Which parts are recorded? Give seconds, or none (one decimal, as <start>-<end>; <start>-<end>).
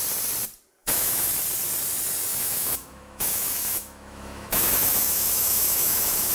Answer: 0.0-0.8; 1.3-2.3